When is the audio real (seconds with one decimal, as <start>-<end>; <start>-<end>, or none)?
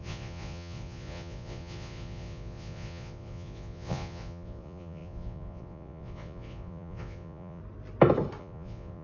7.6-8.4